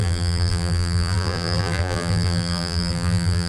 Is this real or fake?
fake